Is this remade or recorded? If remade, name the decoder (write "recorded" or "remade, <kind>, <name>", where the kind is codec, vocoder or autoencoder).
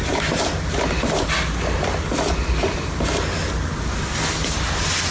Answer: recorded